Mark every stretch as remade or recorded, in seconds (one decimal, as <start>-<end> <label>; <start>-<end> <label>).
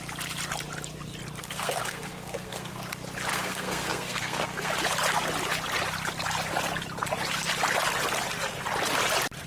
0.0-1.4 recorded; 1.4-2.8 remade; 2.8-3.3 recorded; 3.3-4.7 remade; 4.7-9.5 recorded